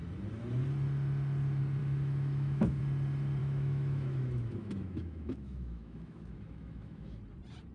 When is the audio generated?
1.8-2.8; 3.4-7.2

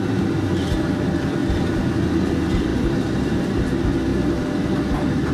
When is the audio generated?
1.4-1.9; 2.7-3.4

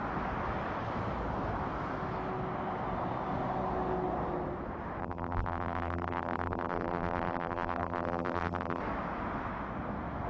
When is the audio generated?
5.0-8.8

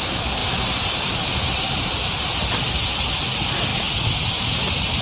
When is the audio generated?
none